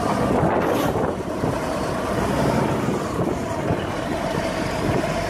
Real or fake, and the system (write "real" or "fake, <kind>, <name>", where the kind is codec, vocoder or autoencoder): real